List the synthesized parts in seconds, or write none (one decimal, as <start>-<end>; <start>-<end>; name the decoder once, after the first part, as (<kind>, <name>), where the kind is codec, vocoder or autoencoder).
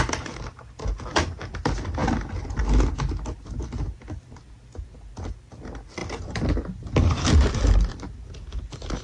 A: none